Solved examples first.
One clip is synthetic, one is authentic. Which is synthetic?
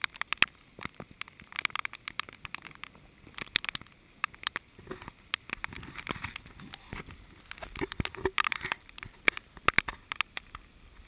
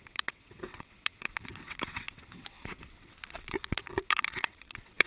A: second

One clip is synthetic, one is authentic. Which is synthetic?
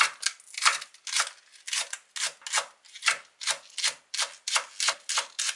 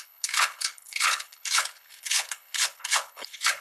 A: second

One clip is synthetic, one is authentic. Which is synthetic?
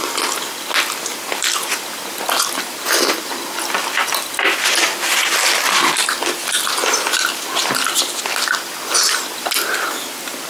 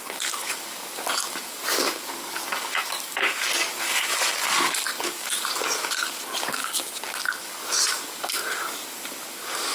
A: second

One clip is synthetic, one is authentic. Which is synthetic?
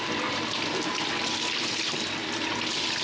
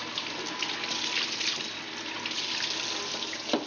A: first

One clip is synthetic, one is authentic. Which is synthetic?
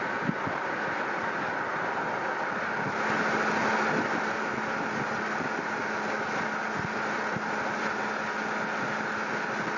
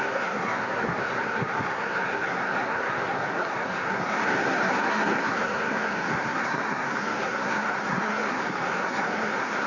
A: second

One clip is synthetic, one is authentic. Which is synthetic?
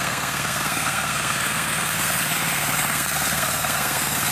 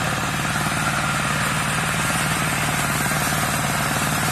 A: first